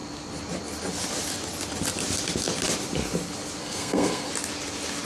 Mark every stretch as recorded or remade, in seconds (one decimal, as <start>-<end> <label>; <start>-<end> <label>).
0.0-3.6 recorded; 3.6-4.3 remade; 4.3-5.1 recorded